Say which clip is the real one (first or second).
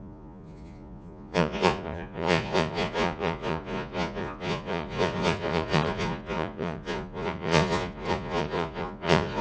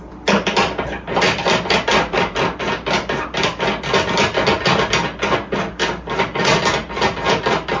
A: second